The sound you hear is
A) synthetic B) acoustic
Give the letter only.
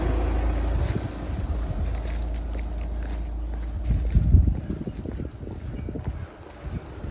B